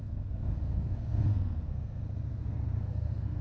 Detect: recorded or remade remade